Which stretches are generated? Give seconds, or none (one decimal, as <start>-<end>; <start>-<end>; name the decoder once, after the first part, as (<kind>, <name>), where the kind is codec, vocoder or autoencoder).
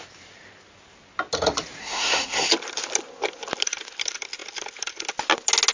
1.8-2.5 (codec, SNAC)